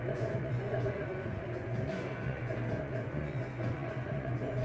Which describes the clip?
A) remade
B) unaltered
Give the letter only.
A